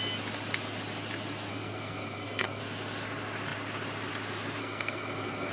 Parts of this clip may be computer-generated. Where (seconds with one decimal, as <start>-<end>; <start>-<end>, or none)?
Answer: 1.5-2.6; 4.6-5.5